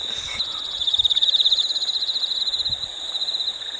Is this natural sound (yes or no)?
yes